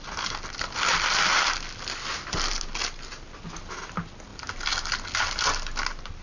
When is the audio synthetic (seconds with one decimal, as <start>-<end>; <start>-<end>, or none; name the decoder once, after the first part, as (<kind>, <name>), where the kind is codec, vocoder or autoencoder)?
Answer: none

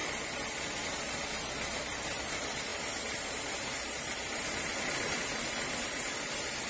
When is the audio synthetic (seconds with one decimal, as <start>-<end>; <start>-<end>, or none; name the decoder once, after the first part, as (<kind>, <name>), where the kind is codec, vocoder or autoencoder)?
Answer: none